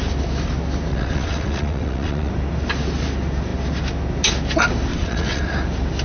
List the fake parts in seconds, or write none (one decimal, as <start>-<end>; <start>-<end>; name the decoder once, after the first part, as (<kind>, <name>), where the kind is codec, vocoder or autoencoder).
0.9-2.3 (vocoder, WaveNeXt); 4.9-5.4